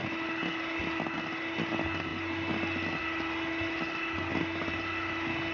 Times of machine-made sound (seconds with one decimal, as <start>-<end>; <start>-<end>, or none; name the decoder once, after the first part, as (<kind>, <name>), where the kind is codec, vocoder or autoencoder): none